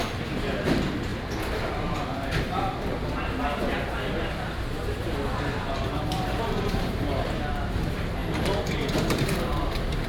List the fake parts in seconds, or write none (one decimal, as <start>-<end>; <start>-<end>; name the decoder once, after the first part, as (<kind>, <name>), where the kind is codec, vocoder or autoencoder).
0.0-1.1 (vocoder, BigVGAN v2); 5.9-10.1